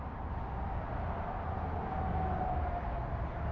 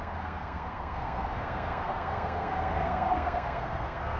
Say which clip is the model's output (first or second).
second